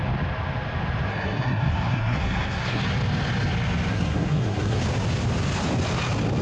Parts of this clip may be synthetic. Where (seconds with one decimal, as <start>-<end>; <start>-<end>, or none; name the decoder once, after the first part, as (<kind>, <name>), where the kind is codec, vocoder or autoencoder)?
1.1-2.8 (codec, SNAC); 3.9-4.8